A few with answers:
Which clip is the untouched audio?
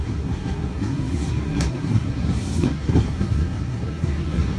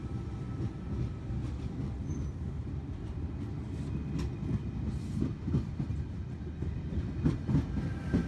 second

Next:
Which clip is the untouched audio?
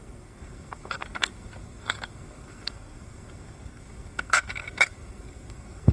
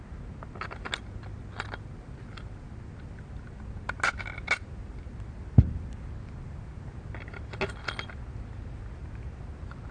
second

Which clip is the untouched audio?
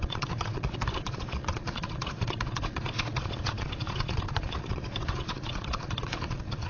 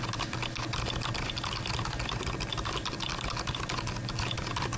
second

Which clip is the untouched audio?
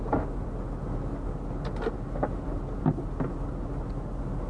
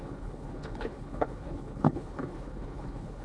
first